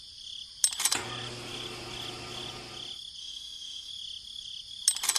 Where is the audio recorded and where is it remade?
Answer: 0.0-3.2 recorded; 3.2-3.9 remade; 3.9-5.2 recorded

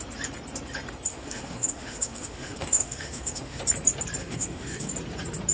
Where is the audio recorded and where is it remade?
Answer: 0.0-1.1 recorded; 1.1-3.6 remade; 3.6-4.2 recorded; 4.2-4.9 remade; 4.9-5.5 recorded

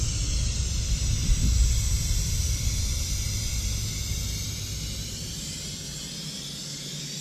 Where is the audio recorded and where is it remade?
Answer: 0.0-7.2 recorded

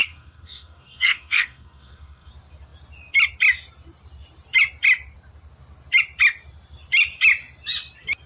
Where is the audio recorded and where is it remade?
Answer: 0.0-2.3 remade; 2.3-8.3 recorded

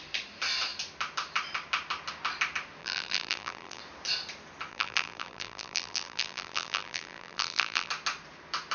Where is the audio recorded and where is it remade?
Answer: 0.0-2.8 recorded; 2.8-3.8 remade; 3.8-4.7 recorded; 4.7-7.9 remade; 7.9-8.7 recorded

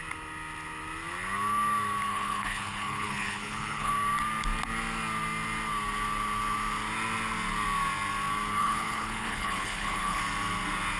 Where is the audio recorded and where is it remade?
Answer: 0.0-2.1 recorded; 2.1-3.9 remade; 3.9-8.6 recorded; 8.6-10.2 remade; 10.2-11.0 recorded

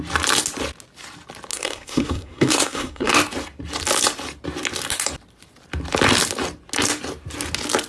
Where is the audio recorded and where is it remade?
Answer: 0.0-1.5 recorded; 1.5-3.1 remade; 3.1-7.9 recorded